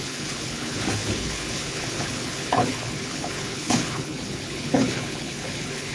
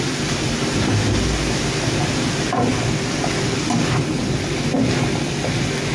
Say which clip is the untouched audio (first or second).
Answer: second